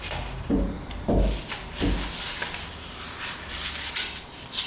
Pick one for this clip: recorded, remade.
recorded